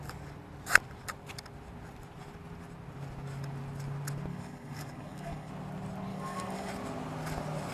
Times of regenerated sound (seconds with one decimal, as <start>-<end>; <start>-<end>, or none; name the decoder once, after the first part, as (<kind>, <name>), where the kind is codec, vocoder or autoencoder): 4.3-5.5 (codec, DAC); 6.1-6.7